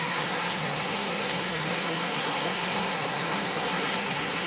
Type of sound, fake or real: fake